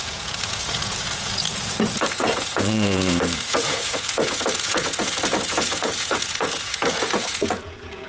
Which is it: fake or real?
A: fake